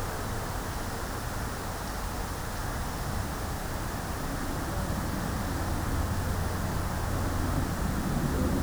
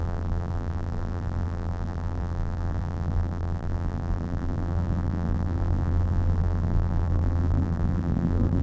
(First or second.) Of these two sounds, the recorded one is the first